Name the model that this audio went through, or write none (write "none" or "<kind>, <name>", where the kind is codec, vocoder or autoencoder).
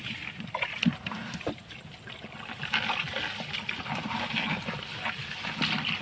none